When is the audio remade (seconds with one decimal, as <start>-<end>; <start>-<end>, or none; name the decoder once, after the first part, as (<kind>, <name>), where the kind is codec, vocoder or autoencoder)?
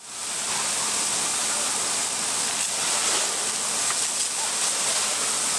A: none